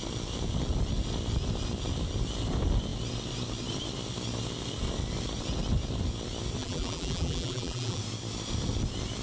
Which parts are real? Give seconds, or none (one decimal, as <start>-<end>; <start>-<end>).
0.0-6.6; 8.0-9.2